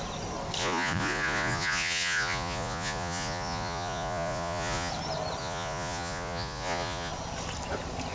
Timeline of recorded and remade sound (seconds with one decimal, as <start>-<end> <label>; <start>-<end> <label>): 0.0-0.6 recorded; 0.6-4.9 remade; 4.9-5.4 recorded; 5.4-7.1 remade; 7.1-8.1 recorded